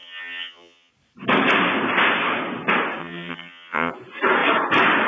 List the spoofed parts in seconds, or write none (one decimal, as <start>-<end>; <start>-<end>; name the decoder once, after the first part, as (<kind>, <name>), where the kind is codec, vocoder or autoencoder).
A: 0.0-0.9 (vocoder, HiFi-GAN); 3.0-3.9